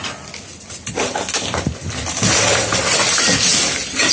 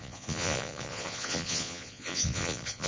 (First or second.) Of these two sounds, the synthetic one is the second